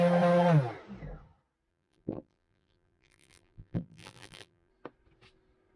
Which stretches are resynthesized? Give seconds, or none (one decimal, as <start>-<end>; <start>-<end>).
1.7-4.7

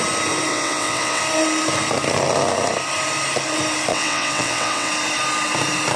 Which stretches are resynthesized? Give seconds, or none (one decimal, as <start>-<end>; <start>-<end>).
0.5-1.2; 3.9-4.9